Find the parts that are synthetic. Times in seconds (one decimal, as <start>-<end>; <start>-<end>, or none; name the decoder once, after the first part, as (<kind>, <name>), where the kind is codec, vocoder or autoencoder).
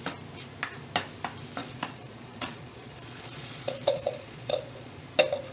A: 1.6-4.9 (vocoder, Vocos)